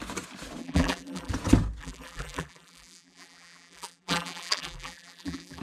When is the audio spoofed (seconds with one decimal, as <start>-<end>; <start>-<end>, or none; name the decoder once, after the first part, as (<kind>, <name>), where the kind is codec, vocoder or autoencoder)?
0.6-1.3 (vocoder, BigVGAN v2); 1.8-5.6